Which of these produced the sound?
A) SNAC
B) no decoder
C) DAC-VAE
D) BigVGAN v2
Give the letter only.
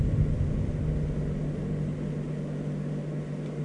B